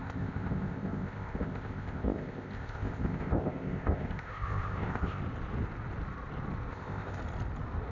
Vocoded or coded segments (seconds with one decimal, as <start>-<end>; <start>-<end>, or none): 0.0-5.2; 6.7-7.2